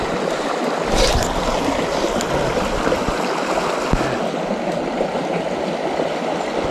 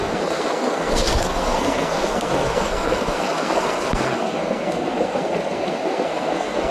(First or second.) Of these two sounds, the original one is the first